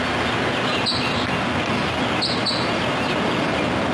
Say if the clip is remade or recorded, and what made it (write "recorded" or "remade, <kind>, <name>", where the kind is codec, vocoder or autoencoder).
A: recorded